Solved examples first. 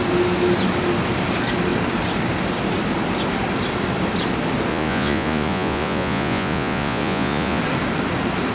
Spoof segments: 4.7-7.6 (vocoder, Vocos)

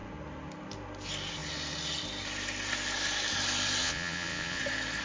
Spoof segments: 3.8-4.6 (vocoder, Vocos)

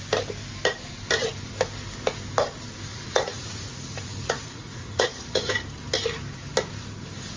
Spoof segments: 2.9-5.5 (vocoder, Vocos)